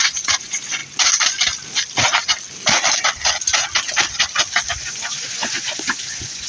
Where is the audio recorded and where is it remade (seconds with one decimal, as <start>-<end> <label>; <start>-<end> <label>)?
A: 0.0-0.8 remade; 0.8-4.7 recorded; 4.7-6.5 remade